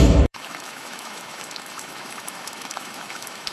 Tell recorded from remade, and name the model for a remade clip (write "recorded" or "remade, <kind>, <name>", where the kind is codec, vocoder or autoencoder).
remade, autoencoder, DAC-VAE